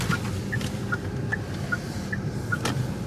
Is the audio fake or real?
fake